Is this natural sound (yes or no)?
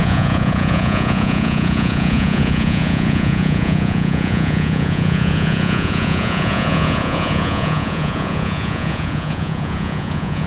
no